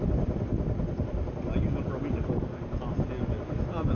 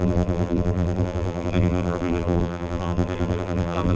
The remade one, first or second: second